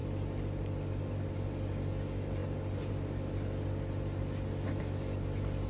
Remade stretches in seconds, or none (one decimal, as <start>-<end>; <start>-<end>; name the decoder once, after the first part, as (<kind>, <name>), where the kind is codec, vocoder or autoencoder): none